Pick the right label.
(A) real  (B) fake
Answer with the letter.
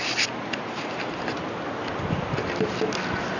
A